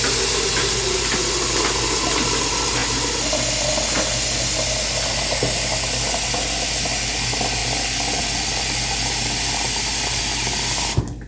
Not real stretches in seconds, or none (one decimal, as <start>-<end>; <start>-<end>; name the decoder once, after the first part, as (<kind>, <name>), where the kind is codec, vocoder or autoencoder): none